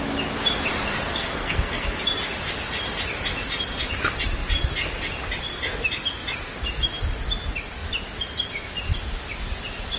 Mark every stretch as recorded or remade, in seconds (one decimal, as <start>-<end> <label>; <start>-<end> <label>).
0.0-1.1 recorded; 1.1-2.0 remade; 2.0-10.0 recorded